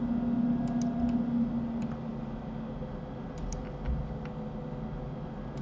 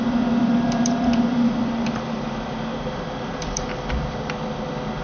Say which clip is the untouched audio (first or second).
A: first